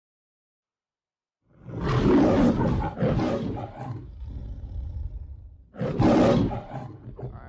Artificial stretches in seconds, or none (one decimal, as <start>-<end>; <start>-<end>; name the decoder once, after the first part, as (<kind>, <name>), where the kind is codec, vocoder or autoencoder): 0.0-1.1 (vocoder, BigVGAN v2); 4.9-7.5